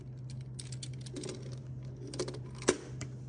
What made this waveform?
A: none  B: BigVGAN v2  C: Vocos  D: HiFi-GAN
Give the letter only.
A